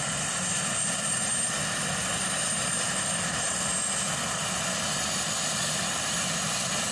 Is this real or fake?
real